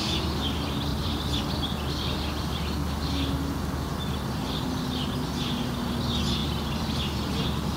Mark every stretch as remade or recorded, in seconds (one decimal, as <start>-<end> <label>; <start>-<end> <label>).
0.0-0.9 recorded; 0.9-1.4 remade; 1.4-6.4 recorded; 6.4-7.3 remade; 7.3-7.8 recorded